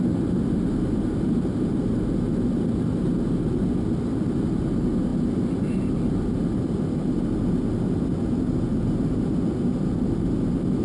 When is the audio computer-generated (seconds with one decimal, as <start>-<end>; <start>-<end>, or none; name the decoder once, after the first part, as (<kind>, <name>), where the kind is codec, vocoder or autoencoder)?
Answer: none